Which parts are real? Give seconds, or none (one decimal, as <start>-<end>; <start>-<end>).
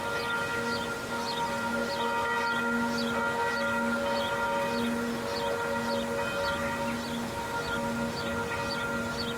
0.0-9.4